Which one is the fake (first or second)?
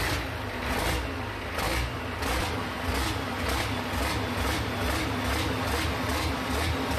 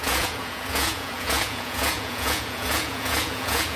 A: second